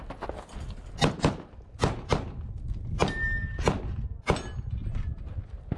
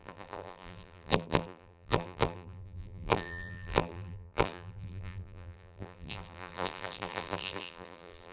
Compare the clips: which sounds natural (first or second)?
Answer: first